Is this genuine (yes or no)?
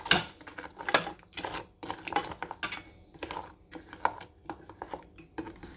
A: yes